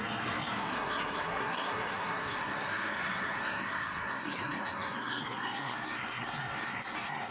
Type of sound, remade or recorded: remade